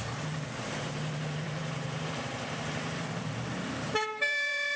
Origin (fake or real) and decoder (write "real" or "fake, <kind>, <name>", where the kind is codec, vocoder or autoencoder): fake, vocoder, BigVGAN v2